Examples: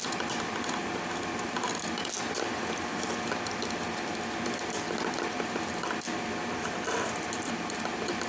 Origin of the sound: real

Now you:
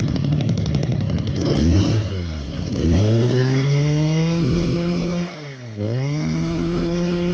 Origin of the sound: fake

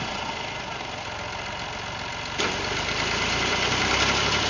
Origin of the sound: real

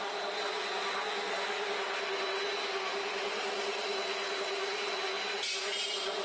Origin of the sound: real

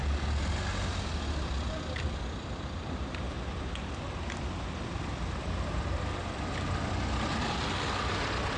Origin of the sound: real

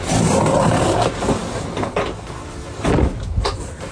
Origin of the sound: real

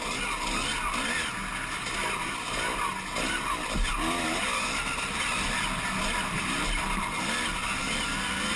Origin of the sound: real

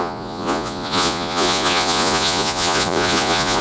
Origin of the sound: fake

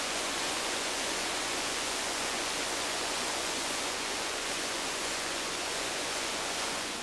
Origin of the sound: fake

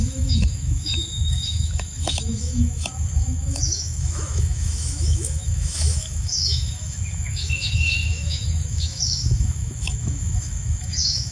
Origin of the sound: fake